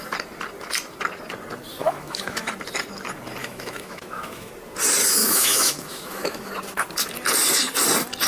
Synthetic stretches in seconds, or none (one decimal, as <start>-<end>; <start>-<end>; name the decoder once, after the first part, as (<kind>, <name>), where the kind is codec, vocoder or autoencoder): 1.8-2.5 (autoencoder, DAC-VAE); 3.4-4.5; 5.2-6.5

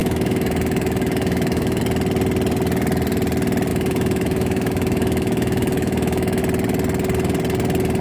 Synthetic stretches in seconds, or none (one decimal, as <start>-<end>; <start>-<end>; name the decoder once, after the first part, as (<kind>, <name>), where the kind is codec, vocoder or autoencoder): 0.0-1.8 (autoencoder, DAC-VAE); 3.7-6.4

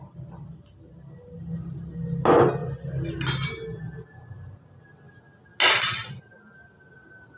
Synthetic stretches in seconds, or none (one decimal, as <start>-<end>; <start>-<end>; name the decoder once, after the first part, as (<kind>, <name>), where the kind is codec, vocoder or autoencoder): none